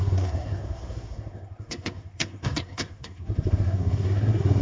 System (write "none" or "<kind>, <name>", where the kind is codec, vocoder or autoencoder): codec, SNAC